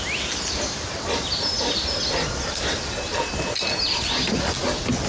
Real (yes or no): yes